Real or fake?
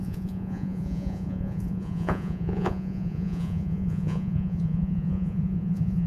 fake